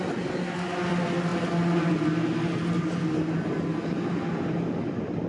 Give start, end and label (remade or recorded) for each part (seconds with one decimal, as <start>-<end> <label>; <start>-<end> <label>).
0.0-5.3 recorded